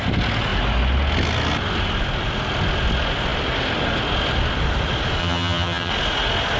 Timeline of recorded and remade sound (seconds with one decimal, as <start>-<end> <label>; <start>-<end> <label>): 0.0-5.2 recorded; 5.2-5.9 remade; 5.9-6.6 recorded